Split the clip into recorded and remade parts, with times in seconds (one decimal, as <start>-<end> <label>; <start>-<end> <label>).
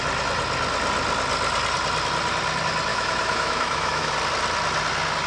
0.0-2.9 recorded; 2.9-4.1 remade; 4.1-5.3 recorded